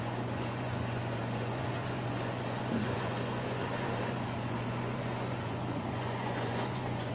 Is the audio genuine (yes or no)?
no